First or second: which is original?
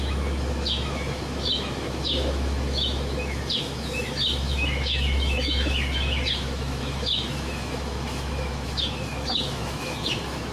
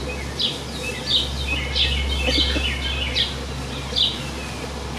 second